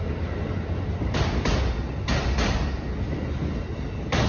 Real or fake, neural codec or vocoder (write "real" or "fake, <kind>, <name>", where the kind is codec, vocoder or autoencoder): real